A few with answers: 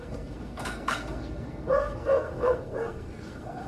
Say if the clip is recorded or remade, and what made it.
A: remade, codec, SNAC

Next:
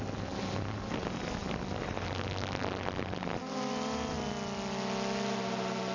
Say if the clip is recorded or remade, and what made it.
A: recorded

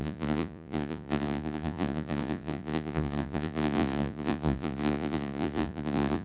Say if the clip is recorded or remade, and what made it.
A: remade, vocoder, Vocos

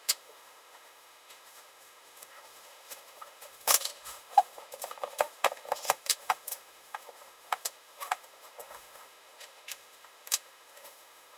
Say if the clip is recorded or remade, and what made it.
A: remade, autoencoder, DAC-VAE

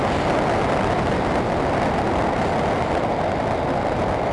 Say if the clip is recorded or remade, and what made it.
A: recorded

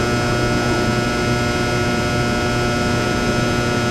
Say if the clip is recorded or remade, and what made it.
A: recorded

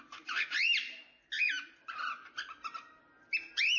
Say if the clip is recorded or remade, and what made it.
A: recorded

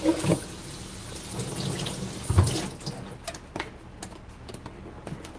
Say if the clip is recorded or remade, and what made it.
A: recorded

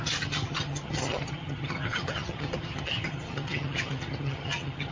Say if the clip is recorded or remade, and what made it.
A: remade, vocoder, HiFi-GAN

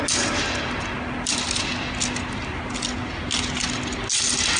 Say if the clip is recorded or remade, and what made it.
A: recorded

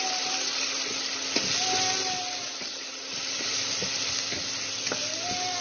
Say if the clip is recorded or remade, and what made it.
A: recorded